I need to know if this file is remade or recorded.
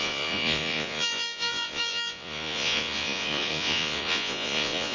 remade